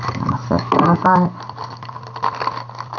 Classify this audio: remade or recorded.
recorded